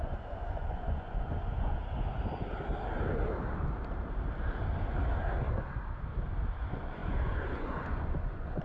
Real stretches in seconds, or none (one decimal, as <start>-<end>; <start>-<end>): 1.8-6.6